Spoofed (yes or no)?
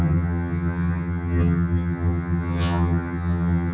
yes